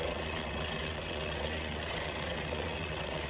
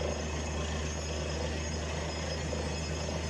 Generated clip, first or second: first